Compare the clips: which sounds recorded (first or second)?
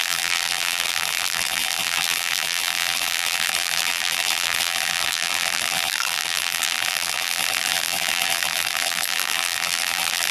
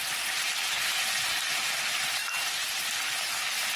second